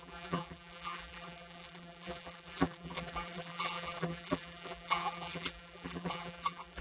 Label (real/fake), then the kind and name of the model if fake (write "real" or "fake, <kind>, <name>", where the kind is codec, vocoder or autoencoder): fake, vocoder, BigVGAN v2